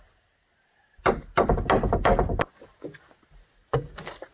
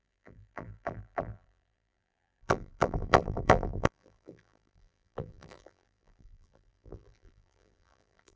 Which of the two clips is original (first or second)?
first